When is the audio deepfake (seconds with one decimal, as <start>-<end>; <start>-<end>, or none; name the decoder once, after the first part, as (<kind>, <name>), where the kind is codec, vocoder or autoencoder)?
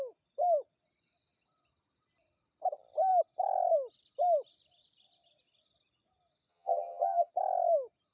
6.5-7.3 (vocoder, HiFi-GAN)